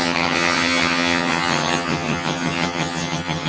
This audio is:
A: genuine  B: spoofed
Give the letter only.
B